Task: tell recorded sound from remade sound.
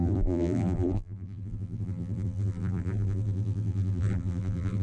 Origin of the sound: remade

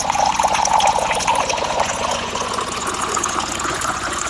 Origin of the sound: remade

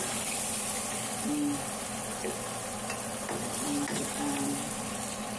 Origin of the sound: recorded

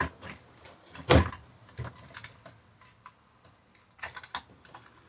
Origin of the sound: recorded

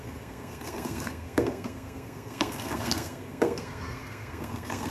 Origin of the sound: remade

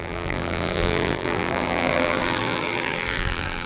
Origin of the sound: remade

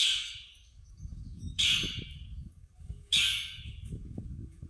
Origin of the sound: remade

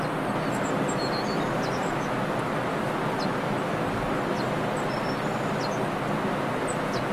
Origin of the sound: recorded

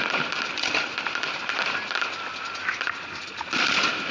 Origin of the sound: recorded